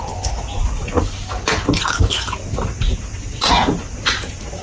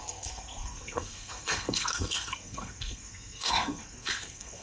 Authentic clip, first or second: first